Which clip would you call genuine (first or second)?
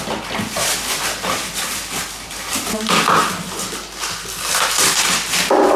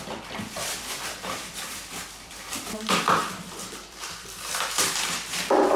first